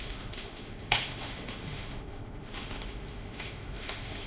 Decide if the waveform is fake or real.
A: fake